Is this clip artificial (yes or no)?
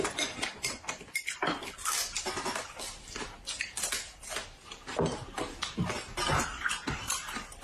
yes